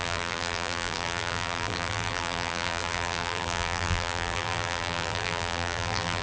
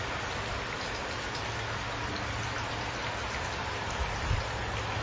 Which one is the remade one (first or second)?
first